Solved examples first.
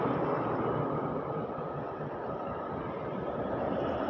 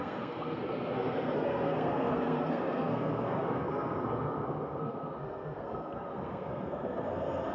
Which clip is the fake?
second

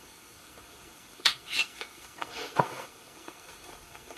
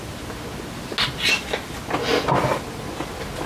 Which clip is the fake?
first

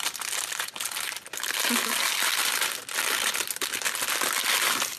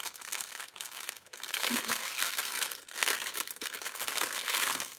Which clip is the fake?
second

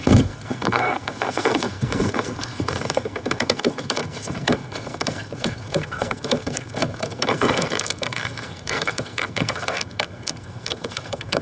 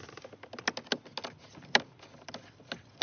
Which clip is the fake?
first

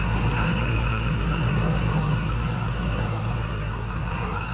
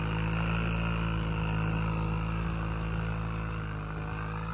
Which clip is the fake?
first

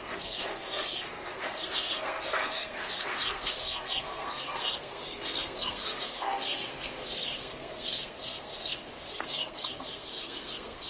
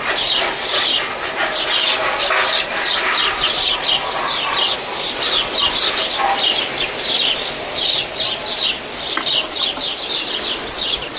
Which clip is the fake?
first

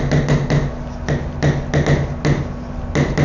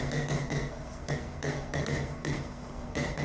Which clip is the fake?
second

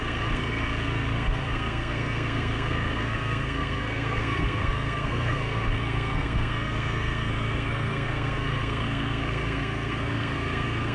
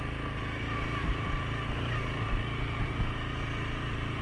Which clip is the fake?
first